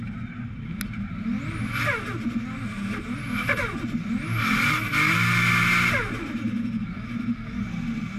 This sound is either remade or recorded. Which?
recorded